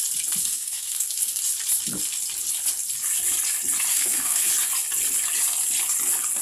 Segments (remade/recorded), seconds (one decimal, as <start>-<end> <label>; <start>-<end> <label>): 0.0-0.4 recorded; 0.4-1.4 remade; 1.4-3.9 recorded; 3.9-4.5 remade; 4.5-6.4 recorded